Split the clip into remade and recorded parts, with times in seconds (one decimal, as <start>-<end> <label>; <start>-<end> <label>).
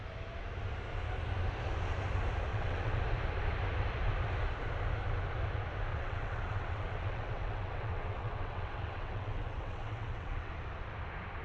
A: 0.0-2.5 recorded; 2.5-3.0 remade; 3.0-5.9 recorded; 5.9-10.5 remade; 10.5-11.4 recorded